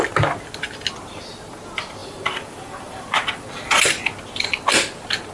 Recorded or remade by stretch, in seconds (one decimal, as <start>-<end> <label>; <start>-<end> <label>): 0.0-2.0 recorded; 2.0-3.7 remade; 3.7-5.3 recorded